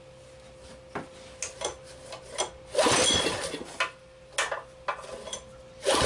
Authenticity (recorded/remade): recorded